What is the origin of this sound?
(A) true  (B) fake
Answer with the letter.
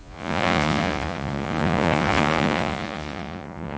B